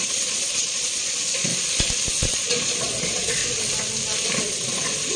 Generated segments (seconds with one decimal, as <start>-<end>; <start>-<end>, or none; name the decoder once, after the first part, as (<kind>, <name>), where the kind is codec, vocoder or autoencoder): 0.0-1.5 (vocoder, Vocos); 2.1-3.4; 4.4-5.2